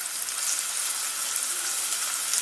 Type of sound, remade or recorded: recorded